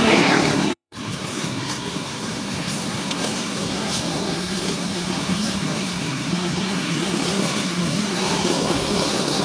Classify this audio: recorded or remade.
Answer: remade